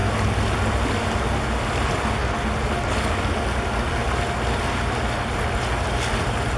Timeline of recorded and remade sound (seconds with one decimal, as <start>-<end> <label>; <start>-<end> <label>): 0.0-6.6 recorded